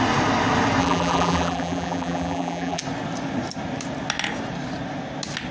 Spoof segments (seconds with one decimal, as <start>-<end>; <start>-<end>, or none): 0.8-2.8